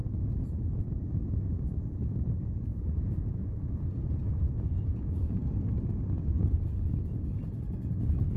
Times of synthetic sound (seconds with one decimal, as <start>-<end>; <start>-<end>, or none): 0.0-1.5; 2.7-5.4

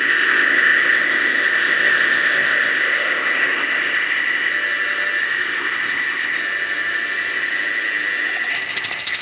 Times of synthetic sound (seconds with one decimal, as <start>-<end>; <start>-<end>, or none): 0.0-4.5; 5.2-6.4; 8.5-9.2

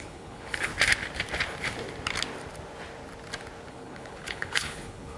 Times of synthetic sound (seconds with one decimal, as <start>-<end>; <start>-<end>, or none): 0.0-0.7; 3.7-5.2